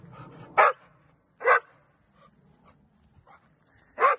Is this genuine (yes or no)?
yes